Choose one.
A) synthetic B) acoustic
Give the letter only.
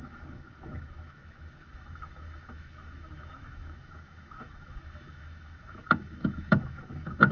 A